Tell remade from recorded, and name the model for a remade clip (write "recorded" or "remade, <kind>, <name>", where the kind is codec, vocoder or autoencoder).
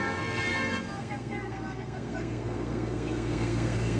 remade, codec, SNAC